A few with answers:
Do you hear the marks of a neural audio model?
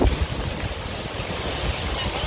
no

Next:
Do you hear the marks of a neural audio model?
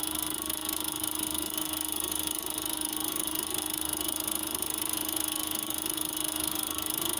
yes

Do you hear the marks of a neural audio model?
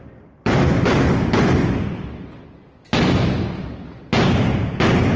no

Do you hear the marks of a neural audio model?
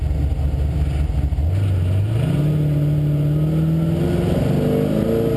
no